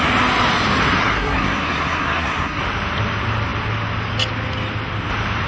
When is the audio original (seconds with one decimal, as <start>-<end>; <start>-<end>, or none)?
0.0-1.0; 2.6-5.5